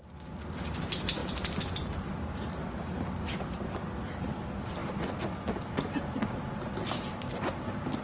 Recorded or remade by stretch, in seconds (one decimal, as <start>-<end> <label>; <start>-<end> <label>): 0.0-8.0 recorded